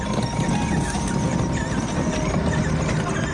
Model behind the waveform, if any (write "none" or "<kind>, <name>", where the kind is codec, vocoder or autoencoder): none